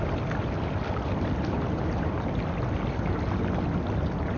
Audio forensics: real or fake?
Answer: real